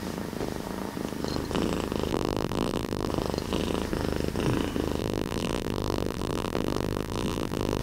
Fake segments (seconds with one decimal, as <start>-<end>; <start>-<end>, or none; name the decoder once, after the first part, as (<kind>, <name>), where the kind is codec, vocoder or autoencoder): 2.1-3.1 (vocoder, BigVGAN v2); 5.0-7.8